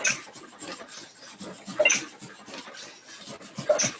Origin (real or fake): real